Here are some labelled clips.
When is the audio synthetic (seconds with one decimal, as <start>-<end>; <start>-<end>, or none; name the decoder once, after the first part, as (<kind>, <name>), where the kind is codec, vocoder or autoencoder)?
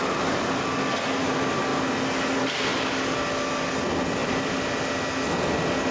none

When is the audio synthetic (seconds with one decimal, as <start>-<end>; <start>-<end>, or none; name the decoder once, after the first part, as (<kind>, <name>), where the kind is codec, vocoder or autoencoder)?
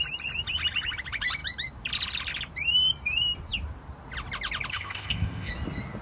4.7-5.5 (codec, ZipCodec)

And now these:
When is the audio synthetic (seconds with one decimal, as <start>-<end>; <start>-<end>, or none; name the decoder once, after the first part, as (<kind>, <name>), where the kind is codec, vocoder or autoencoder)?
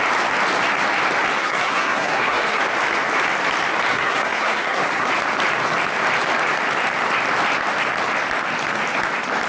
1.4-2.6 (codec, SNAC); 3.9-5.1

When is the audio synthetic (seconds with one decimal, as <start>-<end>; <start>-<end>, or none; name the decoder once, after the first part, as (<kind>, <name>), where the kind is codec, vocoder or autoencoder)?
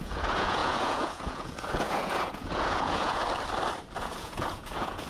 0.0-3.2 (vocoder, Vocos); 4.0-5.1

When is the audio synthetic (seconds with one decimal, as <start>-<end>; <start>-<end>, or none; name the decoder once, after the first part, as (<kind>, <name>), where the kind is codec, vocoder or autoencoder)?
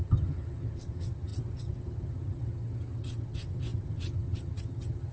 0.0-5.1 (vocoder, HiFi-GAN)